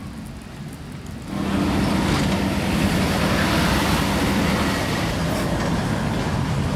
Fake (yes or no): no